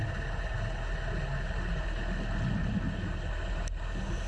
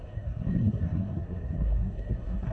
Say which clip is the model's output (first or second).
second